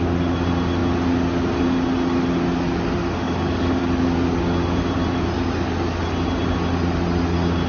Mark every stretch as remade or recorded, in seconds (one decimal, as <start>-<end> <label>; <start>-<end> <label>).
0.0-3.0 recorded; 3.0-3.8 remade; 3.8-7.7 recorded